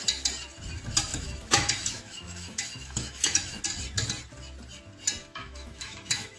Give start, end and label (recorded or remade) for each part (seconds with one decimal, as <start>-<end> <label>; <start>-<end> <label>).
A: 0.0-1.1 recorded; 1.1-3.6 remade; 3.6-5.2 recorded; 5.2-6.4 remade

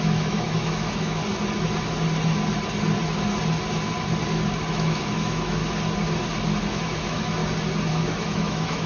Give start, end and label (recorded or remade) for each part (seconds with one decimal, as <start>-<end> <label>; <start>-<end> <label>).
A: 0.0-1.2 remade; 1.2-4.7 recorded; 4.7-5.6 remade; 5.6-6.6 recorded; 6.6-7.4 remade; 7.4-7.9 recorded; 7.9-8.9 remade

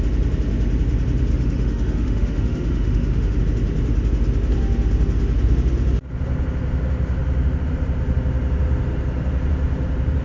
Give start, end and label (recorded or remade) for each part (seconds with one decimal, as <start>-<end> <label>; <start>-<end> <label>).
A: 0.0-1.3 recorded; 1.3-3.4 remade; 3.4-10.2 recorded

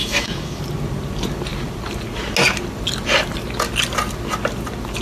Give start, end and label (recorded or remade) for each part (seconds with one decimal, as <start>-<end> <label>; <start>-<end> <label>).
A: 0.0-0.6 remade; 0.6-5.0 recorded

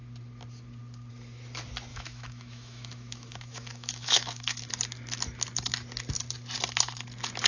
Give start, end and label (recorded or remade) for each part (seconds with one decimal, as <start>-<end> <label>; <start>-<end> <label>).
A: 0.0-1.9 recorded; 1.9-4.7 remade; 4.7-7.5 recorded

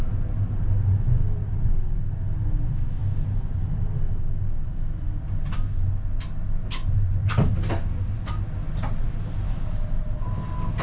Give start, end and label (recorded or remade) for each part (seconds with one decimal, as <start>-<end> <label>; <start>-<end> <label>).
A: 0.0-10.8 recorded

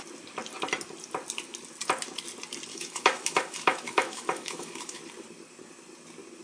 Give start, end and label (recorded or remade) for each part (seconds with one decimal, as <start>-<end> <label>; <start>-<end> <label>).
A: 0.0-2.7 recorded; 2.7-5.0 remade; 5.0-6.4 recorded